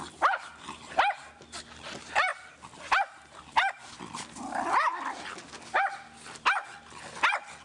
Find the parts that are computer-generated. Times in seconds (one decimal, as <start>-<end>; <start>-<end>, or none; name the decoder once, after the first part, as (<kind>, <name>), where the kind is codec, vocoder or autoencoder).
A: none